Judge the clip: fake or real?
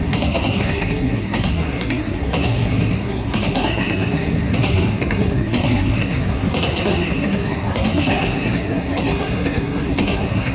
fake